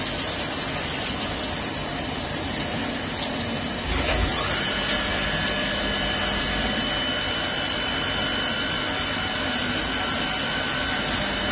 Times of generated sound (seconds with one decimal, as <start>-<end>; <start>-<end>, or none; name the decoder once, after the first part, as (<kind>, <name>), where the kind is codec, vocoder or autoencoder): none